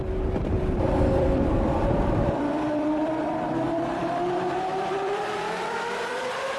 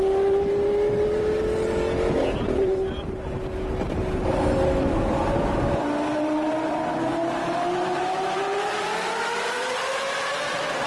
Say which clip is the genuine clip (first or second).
second